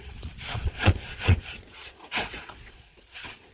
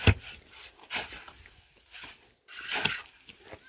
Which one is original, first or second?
second